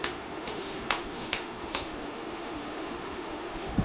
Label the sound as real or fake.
fake